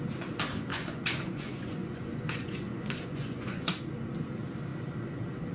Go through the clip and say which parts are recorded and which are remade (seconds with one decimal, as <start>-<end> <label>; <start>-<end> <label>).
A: 0.0-0.7 recorded; 0.7-3.8 remade; 3.8-5.5 recorded